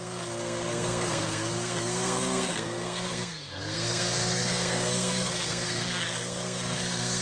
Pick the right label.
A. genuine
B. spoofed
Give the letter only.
B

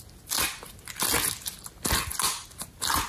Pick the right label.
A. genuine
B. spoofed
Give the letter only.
A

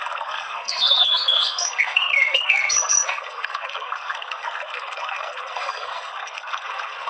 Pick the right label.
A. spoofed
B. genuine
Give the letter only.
A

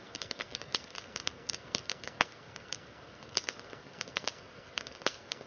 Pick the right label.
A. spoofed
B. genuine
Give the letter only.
A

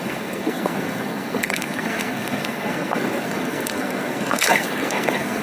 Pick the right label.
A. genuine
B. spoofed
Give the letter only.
B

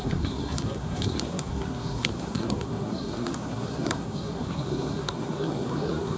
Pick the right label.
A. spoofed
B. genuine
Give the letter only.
A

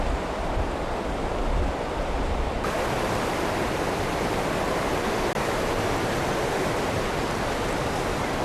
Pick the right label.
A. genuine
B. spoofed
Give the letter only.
A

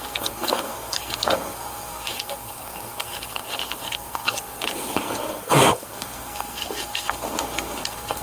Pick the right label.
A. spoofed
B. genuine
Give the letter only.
A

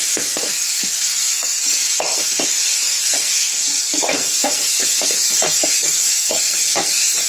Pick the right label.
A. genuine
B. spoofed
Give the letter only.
B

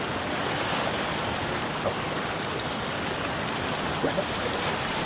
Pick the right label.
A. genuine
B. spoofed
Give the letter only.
A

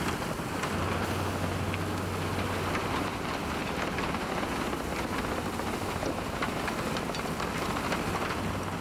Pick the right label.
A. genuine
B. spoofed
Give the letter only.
A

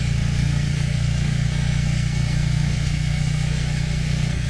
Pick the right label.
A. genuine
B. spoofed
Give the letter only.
B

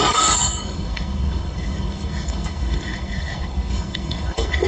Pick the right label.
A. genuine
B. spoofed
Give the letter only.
B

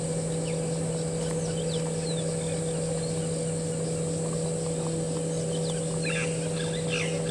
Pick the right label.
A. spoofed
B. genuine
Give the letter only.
B